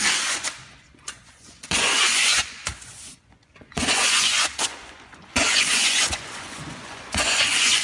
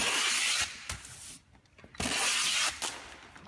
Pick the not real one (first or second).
first